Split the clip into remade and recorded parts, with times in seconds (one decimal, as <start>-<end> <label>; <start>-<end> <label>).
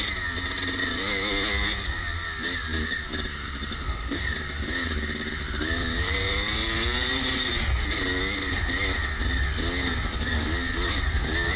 0.0-2.7 recorded; 2.7-7.7 remade; 7.7-11.6 recorded